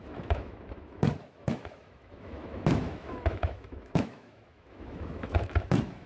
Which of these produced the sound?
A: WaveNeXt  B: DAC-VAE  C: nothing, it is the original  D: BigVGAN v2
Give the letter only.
B